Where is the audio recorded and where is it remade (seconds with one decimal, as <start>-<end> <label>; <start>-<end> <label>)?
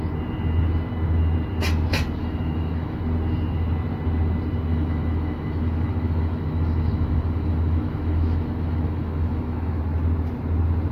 0.0-2.2 recorded; 2.2-3.0 remade; 3.0-4.7 recorded; 4.7-9.8 remade; 9.8-10.9 recorded